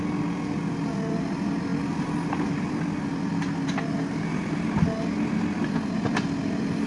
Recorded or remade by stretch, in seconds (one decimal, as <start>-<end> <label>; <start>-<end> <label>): 0.0-6.9 recorded